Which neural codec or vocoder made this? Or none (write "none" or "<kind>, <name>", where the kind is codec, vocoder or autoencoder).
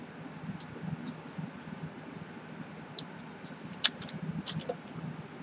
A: none